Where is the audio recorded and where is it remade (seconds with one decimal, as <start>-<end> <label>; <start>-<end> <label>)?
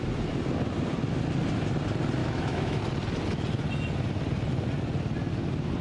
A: 0.0-2.2 recorded; 2.2-2.8 remade; 2.8-5.8 recorded